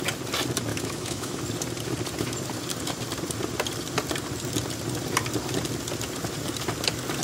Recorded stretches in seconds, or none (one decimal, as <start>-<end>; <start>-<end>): 0.0-0.7; 1.4-7.2